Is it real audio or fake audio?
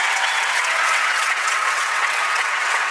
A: fake